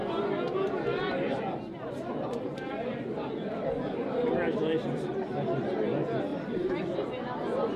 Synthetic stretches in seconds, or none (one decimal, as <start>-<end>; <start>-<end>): 2.5-5.7; 6.3-6.8